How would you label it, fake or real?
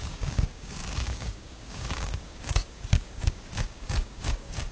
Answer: fake